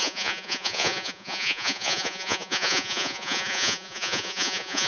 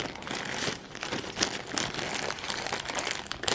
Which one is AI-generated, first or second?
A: first